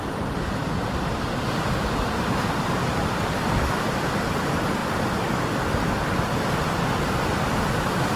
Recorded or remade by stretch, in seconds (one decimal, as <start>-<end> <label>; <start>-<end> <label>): 0.0-4.8 remade; 4.8-7.5 recorded; 7.5-8.2 remade